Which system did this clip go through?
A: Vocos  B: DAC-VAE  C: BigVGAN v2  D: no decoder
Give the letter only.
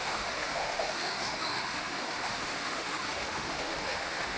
B